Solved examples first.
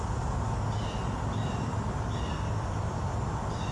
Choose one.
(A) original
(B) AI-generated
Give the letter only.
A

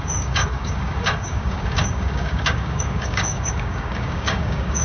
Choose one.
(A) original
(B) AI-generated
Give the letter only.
B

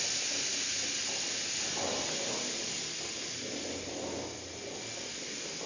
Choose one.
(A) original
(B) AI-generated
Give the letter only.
A